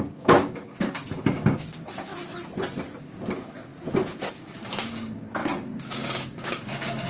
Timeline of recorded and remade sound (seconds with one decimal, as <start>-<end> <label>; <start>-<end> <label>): 0.0-2.1 remade; 2.1-3.0 recorded; 3.0-3.7 remade; 3.7-4.3 recorded; 4.3-7.1 remade